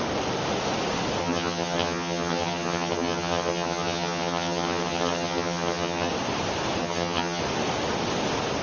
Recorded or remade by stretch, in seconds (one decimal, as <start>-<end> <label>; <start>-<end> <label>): 0.0-1.2 recorded; 1.2-6.1 remade; 6.1-6.8 recorded; 6.8-7.4 remade; 7.4-8.6 recorded